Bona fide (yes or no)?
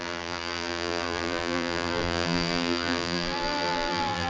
no